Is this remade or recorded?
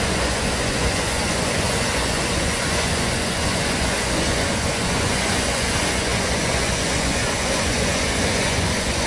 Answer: remade